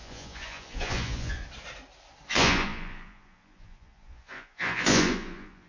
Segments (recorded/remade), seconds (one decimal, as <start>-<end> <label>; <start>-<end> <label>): 0.0-1.4 remade; 1.4-2.3 recorded; 2.3-5.7 remade